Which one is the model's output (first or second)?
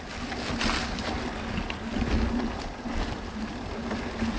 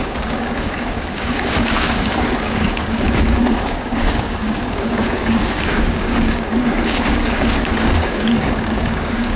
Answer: second